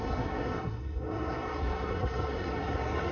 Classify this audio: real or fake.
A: fake